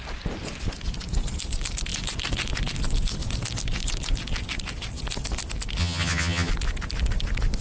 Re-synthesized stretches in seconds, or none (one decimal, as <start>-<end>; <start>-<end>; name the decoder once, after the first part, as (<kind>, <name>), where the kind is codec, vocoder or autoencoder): 5.8-6.5 (vocoder, HiFi-GAN)